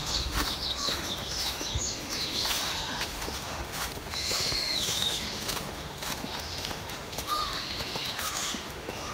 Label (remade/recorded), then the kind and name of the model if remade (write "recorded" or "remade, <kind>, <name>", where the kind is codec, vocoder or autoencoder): remade, autoencoder, DAC-VAE